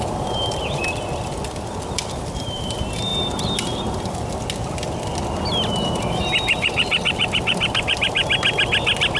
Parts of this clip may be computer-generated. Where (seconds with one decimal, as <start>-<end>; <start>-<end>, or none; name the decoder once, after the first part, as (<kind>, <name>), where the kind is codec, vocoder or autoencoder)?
0.0-0.8 (vocoder, BigVGAN v2); 2.2-3.1; 6.0-8.2

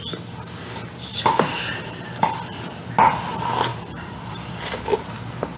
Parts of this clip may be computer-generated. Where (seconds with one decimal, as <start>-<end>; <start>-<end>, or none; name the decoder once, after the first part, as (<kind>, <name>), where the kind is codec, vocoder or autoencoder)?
1.1-2.6 (vocoder, BigVGAN v2); 3.7-4.8

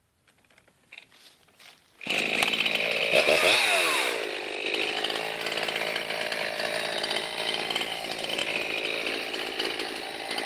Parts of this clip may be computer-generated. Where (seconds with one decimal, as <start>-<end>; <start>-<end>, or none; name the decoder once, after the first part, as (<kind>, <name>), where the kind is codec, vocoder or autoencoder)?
none

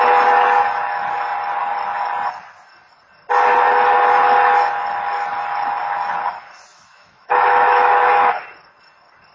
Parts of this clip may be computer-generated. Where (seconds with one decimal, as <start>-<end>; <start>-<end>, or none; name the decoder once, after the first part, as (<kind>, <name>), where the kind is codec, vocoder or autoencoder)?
6.7-8.3 (autoencoder, DAC-VAE)

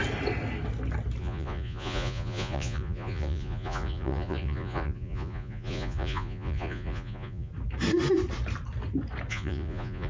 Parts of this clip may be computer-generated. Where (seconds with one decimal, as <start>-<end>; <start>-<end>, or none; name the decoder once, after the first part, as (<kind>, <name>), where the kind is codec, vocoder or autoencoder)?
1.2-7.5 (vocoder, Vocos); 9.3-10.1

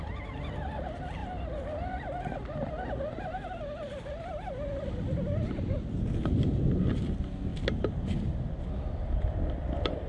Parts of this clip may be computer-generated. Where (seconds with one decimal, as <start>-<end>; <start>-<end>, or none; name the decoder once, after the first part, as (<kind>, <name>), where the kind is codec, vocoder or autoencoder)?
none

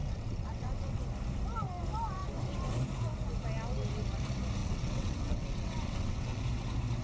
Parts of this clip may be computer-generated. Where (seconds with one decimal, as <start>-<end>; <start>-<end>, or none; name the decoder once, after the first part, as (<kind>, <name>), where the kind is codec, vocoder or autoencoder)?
0.0-1.0 (vocoder, WaveNeXt); 4.6-6.4